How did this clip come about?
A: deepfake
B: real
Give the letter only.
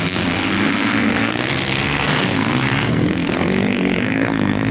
A